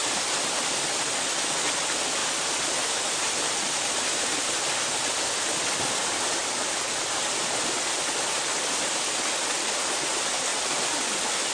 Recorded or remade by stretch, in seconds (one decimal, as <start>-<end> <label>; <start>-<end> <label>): 0.0-1.0 remade; 1.0-10.5 recorded; 10.5-11.5 remade